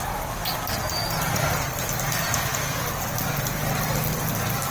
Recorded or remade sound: recorded